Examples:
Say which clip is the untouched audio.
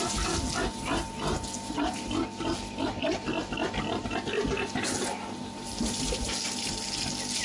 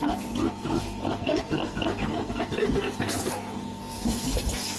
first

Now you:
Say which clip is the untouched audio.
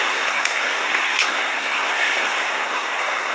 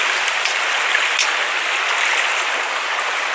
second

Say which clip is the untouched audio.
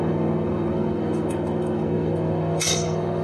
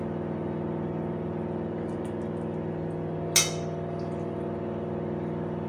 second